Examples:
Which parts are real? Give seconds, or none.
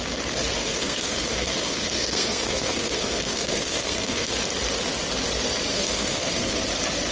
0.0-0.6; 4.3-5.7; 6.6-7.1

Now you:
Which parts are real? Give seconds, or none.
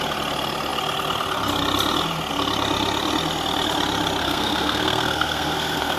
0.0-4.2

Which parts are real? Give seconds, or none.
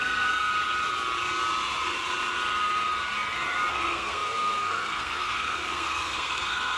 0.5-3.7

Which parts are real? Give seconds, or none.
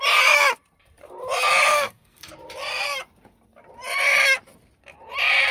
0.0-1.7; 2.3-5.5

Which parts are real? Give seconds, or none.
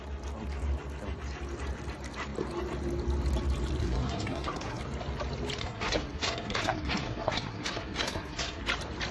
0.0-3.8; 4.8-5.6; 8.6-9.1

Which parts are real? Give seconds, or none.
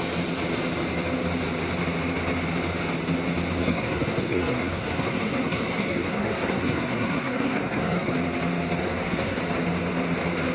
0.0-3.6; 8.1-8.8; 9.4-10.5